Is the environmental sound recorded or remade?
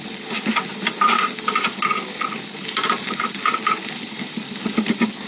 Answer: recorded